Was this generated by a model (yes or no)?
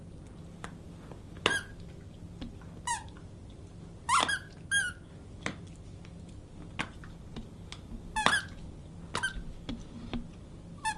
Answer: no